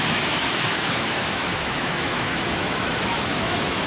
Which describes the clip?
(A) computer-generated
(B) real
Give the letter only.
A